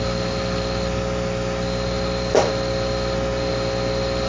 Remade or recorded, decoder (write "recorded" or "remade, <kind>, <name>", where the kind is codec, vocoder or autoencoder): recorded